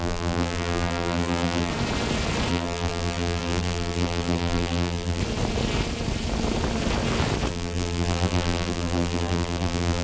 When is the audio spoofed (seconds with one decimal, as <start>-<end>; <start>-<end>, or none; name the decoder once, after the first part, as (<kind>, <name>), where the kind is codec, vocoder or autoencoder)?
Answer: 0.0-1.7 (vocoder, BigVGAN v2); 2.5-5.2; 7.5-10.0